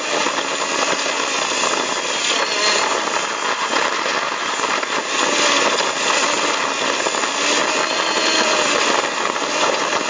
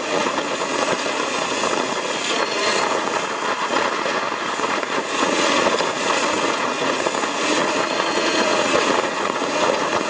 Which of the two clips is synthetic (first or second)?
second